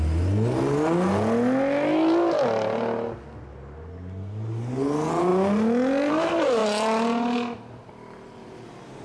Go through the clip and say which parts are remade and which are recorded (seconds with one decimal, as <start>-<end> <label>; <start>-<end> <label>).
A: 0.0-9.0 recorded